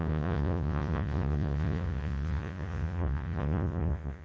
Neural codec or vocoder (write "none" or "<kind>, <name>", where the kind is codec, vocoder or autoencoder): vocoder, Vocos